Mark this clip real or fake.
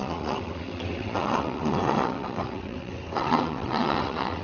fake